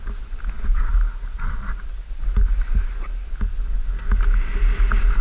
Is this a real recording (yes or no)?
yes